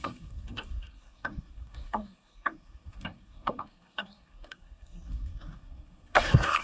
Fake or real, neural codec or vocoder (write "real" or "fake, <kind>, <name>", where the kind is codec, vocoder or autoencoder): fake, codec, SNAC